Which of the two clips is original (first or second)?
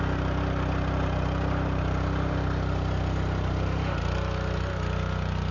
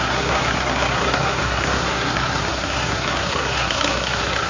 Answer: first